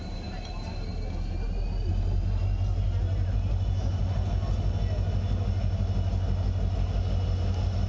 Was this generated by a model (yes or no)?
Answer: no